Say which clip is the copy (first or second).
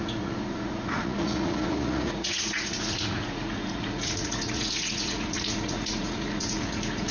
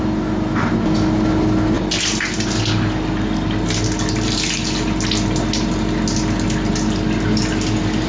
first